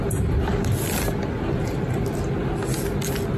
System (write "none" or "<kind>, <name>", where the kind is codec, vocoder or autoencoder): none